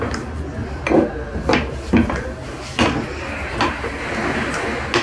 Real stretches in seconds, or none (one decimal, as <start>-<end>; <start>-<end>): 0.0-5.0